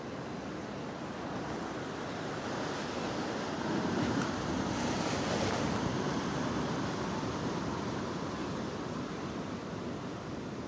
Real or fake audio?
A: real